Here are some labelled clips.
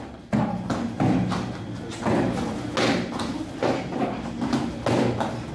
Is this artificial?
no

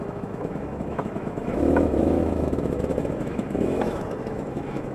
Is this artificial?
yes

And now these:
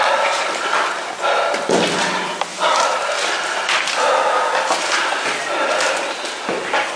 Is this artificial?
no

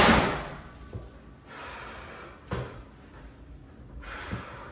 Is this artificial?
no